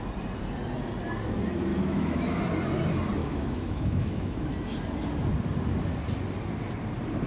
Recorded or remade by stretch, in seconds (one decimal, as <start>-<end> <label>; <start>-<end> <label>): 0.0-1.7 recorded; 1.7-2.4 remade; 2.4-3.2 recorded; 3.2-4.5 remade; 4.5-7.3 recorded